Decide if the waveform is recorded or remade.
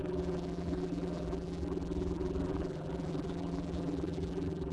remade